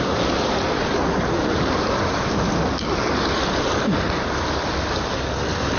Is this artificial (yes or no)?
no